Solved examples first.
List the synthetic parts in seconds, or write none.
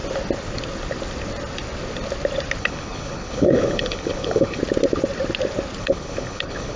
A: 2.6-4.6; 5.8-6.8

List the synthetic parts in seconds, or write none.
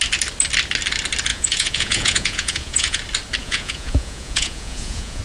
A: 1.3-3.0; 3.4-5.2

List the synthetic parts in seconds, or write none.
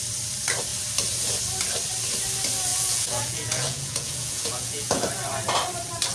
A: 2.7-5.0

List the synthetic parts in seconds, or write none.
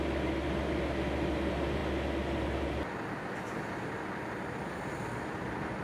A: none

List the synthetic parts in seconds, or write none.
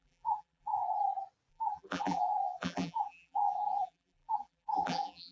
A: 0.0-0.8; 1.5-5.3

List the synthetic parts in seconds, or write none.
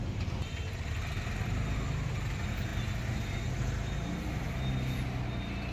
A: none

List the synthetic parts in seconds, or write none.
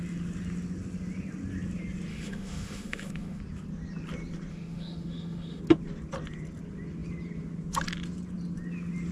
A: 2.1-3.4; 4.5-5.6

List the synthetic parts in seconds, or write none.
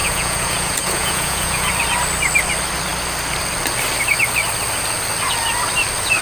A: 0.0-1.7